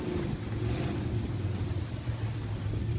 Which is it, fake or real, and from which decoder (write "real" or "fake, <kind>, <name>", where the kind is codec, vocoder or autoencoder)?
real